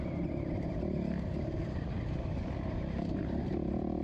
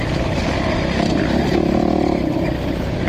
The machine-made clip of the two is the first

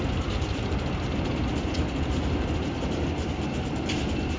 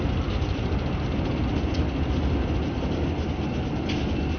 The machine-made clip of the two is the first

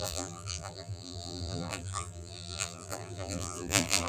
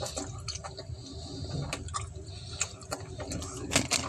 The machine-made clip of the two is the first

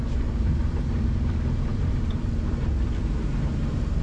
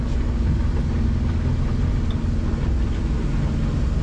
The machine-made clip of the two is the first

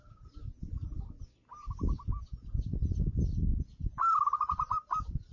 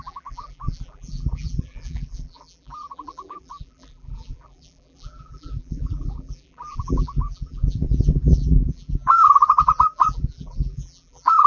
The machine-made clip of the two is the second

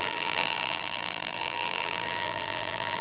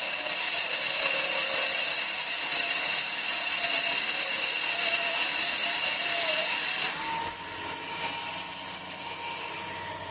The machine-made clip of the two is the first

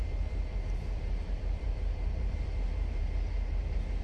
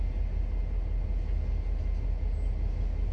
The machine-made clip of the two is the first